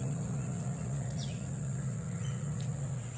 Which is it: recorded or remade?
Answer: remade